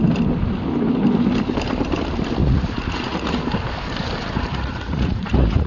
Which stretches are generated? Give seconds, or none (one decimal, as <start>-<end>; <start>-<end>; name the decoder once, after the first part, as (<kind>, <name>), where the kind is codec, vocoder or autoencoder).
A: 2.4-3.4 (vocoder, Vocos); 4.5-5.7